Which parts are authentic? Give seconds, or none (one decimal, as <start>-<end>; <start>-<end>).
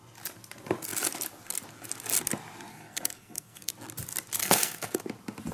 0.0-2.7; 3.7-4.4; 5.0-5.5